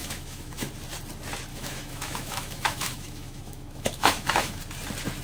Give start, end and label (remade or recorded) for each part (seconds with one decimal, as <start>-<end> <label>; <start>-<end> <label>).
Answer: 0.0-0.7 remade; 0.7-1.5 recorded; 1.5-4.6 remade; 4.6-5.2 recorded